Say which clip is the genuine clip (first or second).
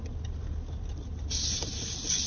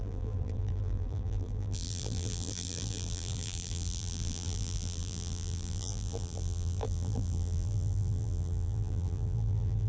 first